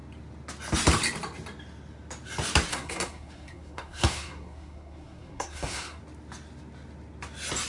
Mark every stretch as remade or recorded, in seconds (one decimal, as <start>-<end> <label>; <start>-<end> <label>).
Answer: 0.0-2.7 recorded; 2.7-6.0 remade; 6.0-7.7 recorded

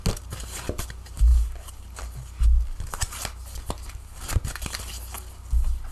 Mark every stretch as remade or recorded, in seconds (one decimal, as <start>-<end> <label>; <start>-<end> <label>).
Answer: 0.0-5.9 recorded